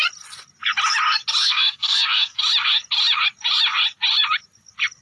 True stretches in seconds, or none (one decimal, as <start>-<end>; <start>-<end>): 0.0-1.4; 2.4-5.0